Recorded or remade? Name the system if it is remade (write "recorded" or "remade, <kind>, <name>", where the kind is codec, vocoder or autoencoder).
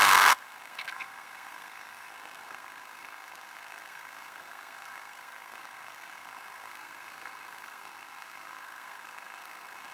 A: remade, codec, SNAC